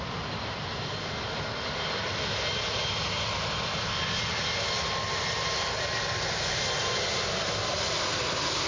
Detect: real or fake real